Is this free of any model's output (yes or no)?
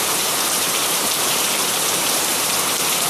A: no